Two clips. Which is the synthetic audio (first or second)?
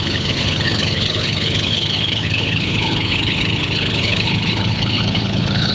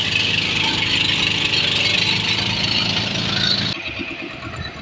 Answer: first